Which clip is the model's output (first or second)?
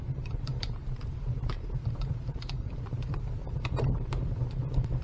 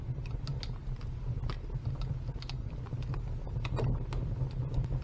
first